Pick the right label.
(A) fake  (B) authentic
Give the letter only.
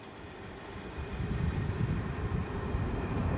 B